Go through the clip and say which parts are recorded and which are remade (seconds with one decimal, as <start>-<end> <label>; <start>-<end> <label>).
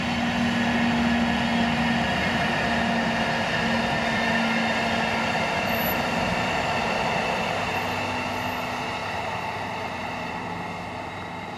0.0-9.0 recorded; 9.0-10.3 remade; 10.3-11.6 recorded